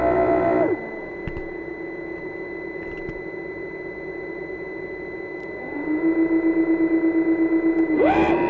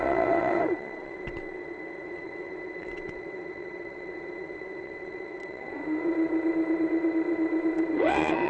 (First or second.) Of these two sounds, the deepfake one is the second